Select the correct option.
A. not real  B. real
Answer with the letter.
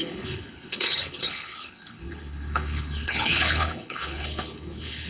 A